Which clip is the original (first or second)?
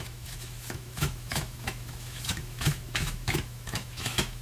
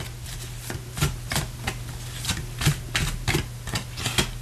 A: second